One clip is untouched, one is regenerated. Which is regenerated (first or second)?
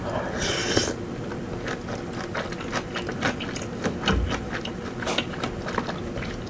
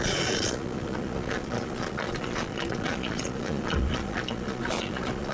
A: second